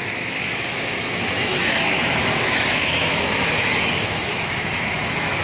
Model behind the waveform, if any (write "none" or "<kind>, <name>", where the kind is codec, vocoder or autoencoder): autoencoder, DAC-VAE